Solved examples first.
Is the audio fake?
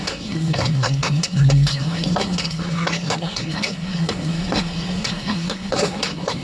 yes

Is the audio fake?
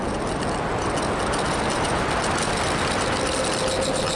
no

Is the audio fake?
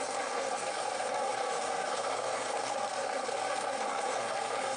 yes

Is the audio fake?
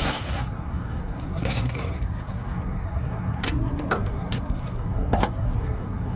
yes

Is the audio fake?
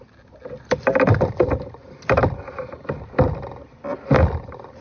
no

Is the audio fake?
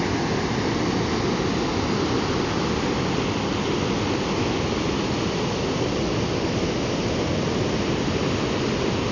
no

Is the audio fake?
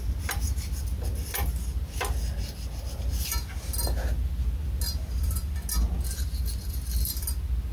no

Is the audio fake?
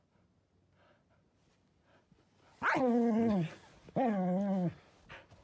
no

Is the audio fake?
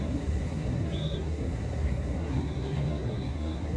yes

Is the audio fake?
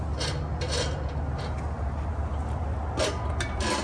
no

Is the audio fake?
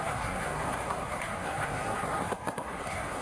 yes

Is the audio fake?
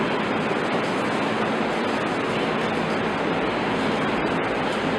no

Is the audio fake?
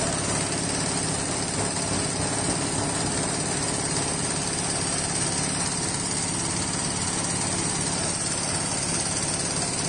no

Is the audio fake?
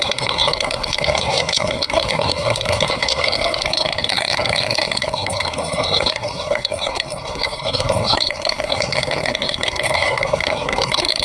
yes